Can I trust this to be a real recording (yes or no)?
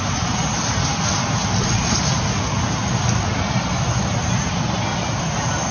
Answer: yes